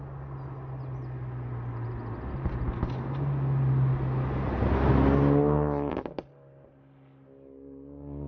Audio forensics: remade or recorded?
recorded